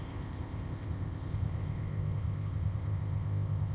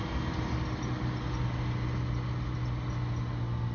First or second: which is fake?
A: first